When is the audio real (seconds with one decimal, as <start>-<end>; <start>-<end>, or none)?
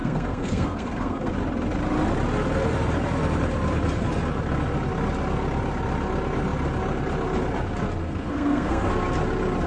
1.3-8.0; 8.9-9.7